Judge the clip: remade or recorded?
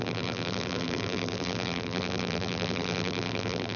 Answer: remade